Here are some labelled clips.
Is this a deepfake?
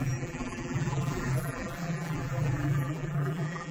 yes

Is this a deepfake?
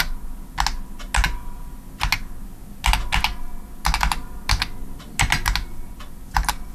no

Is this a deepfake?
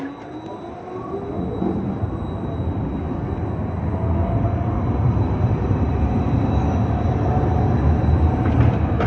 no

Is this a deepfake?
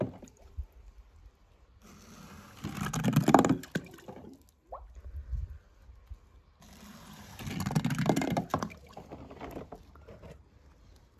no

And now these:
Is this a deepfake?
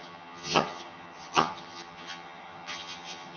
yes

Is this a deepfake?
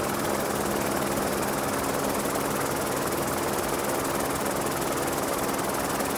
no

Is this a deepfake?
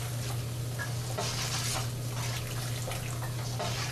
no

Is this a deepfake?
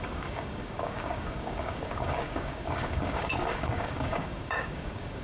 yes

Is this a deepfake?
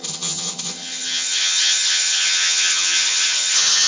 yes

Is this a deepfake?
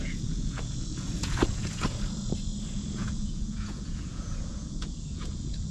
yes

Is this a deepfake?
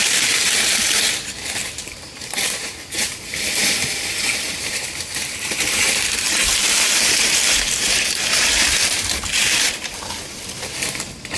yes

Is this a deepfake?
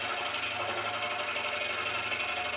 no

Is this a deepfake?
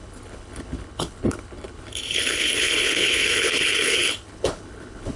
yes